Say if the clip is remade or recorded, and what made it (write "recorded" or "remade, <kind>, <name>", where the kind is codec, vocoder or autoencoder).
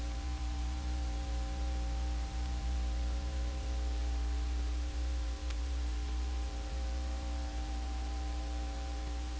remade, vocoder, BigVGAN v2